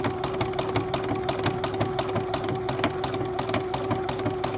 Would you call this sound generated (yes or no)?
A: no